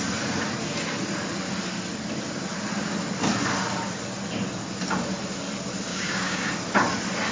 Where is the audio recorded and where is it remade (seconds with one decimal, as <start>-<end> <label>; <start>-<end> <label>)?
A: 0.0-5.9 recorded; 5.9-6.5 remade; 6.5-7.3 recorded